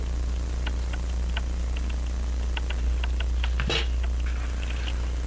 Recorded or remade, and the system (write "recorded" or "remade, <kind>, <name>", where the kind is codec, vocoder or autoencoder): recorded